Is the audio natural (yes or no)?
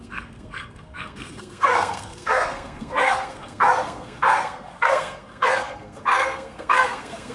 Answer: no